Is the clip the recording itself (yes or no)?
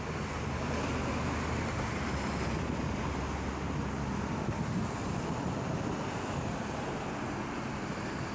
yes